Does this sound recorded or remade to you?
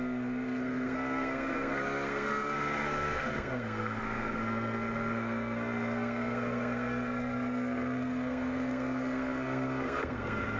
remade